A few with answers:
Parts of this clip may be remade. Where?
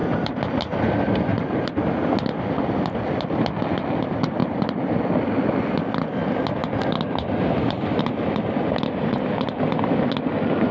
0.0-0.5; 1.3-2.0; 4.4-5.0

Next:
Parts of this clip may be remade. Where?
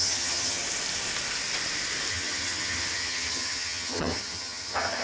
0.0-0.6; 2.1-5.0